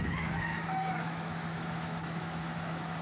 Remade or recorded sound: remade